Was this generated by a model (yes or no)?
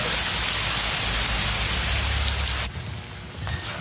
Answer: no